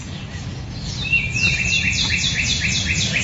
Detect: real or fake fake